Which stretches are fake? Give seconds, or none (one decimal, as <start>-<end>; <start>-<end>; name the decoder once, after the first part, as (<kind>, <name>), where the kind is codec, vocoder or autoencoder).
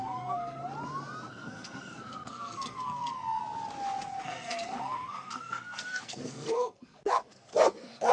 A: 0.0-0.6 (codec, SNAC); 1.3-3.4; 4.2-8.1